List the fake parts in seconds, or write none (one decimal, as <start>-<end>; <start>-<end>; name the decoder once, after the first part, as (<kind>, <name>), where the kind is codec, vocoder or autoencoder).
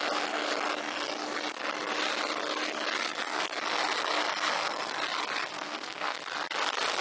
5.5-6.2 (codec, SNAC)